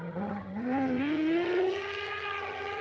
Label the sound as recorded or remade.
remade